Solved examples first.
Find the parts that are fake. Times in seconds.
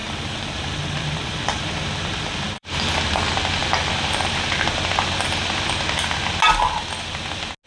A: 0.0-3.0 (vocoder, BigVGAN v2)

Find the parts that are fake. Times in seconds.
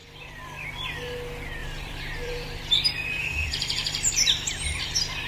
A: 1.6-4.8 (vocoder, BigVGAN v2)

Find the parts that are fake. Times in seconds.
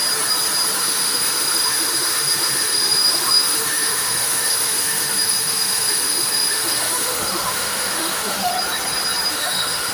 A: 0.8-8.5 (autoencoder, DAC-VAE); 9.3-9.9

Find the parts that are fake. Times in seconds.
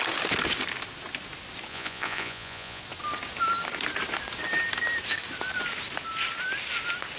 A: 1.7-2.8 (vocoder, Vocos)